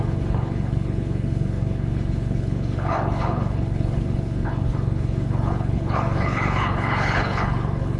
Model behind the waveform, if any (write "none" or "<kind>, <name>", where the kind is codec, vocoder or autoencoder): codec, HILCodec